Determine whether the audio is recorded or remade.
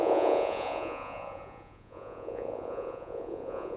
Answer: remade